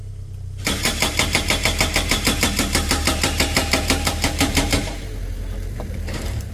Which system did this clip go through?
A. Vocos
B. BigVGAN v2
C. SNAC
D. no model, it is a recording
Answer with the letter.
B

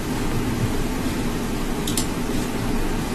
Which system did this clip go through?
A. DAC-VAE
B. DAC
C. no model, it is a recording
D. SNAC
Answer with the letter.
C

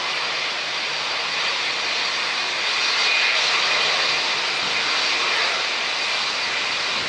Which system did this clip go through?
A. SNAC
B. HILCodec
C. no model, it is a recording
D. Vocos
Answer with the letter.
C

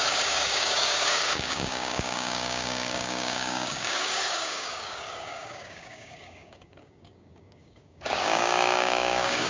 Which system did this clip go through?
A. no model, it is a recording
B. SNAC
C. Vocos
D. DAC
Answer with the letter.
D